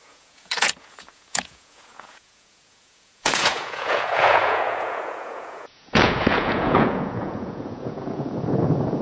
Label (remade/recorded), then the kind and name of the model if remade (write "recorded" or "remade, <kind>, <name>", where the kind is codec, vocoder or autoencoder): remade, vocoder, Vocos